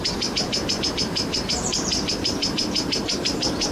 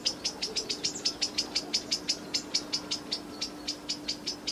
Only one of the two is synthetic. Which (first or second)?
first